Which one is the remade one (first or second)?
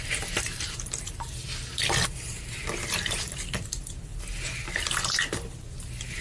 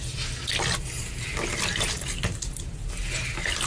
first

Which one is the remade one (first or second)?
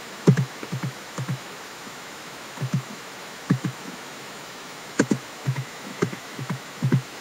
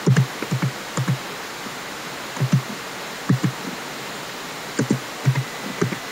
first